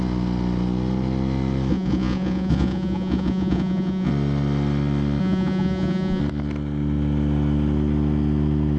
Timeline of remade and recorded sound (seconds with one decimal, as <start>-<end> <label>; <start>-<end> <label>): 0.0-1.7 recorded; 1.7-4.1 remade; 4.1-5.2 recorded; 5.2-6.2 remade; 6.2-8.8 recorded